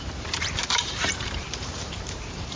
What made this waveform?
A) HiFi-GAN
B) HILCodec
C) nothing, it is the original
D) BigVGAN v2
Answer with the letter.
D